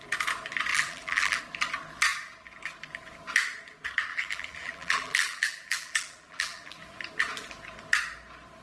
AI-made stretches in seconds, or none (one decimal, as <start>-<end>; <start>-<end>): 0.7-1.4; 4.1-6.8

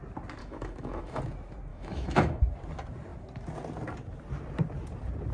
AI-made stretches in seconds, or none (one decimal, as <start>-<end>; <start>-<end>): 0.4-1.2; 1.7-2.4

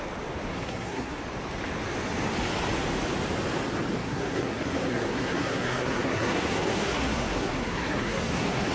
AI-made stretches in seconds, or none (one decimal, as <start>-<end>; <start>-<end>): 0.5-1.2; 4.0-8.7

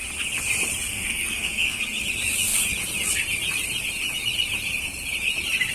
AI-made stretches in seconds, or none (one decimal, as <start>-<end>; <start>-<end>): 0.9-1.8